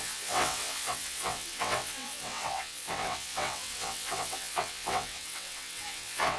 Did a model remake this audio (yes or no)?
yes